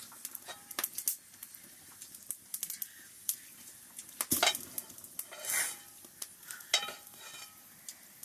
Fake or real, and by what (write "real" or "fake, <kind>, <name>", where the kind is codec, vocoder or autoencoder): real